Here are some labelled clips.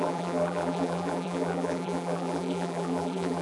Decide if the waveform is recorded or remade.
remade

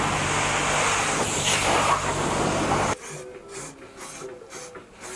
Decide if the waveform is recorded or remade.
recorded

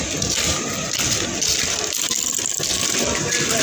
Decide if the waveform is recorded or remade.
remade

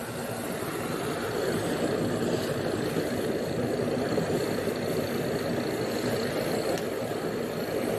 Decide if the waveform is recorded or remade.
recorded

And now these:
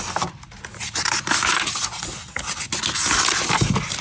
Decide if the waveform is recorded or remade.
recorded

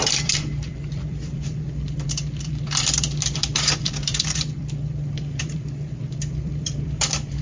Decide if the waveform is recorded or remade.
remade